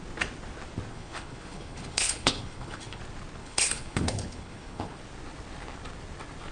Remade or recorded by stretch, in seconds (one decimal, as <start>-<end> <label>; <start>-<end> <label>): 0.0-0.9 recorded; 0.9-3.0 remade; 3.0-3.4 recorded; 3.4-5.0 remade; 5.0-6.5 recorded